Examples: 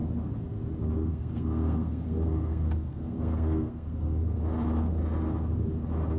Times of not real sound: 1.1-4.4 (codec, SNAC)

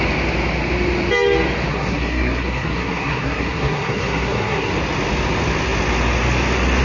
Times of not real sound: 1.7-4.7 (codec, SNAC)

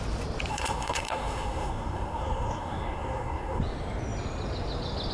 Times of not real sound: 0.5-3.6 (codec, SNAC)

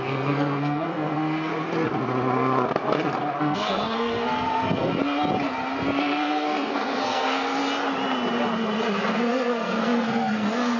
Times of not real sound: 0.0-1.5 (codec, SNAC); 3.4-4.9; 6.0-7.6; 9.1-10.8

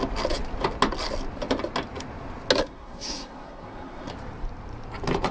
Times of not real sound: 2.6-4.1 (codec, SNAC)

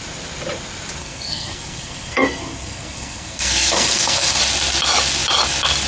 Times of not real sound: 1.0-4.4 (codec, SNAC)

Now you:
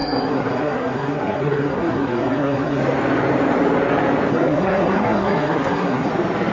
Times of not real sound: 0.0-2.8 (codec, SNAC); 4.3-6.1

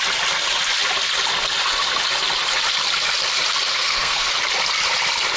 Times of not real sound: 3.7-4.3 (codec, SNAC)